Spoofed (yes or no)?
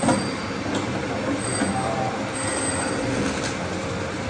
no